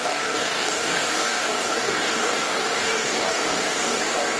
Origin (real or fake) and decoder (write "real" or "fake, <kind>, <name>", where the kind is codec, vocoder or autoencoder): fake, codec, DAC